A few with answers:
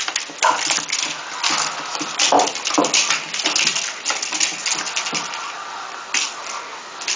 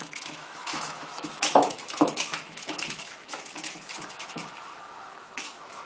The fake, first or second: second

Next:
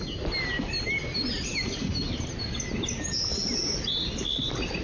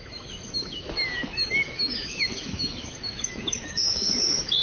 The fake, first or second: second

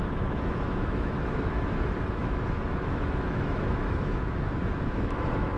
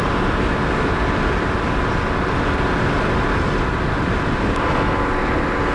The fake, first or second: first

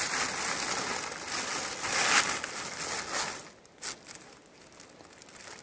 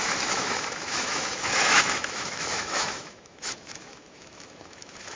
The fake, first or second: second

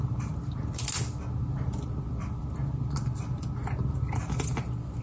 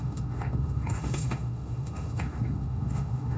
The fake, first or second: second